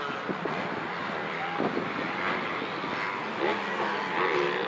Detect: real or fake real